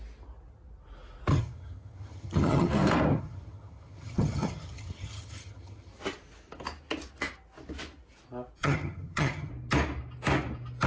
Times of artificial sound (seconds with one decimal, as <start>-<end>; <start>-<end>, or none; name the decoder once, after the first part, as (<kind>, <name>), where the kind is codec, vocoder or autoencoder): 1.3-2.7 (vocoder, HiFi-GAN); 3.1-5.9; 8.6-9.5